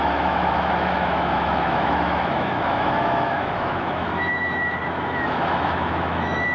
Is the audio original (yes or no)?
no